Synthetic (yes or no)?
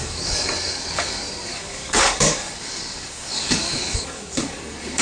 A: yes